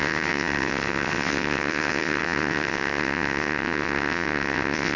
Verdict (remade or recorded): remade